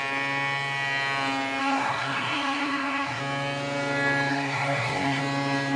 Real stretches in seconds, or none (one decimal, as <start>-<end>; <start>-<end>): 0.0-1.6; 3.2-4.3; 5.2-5.8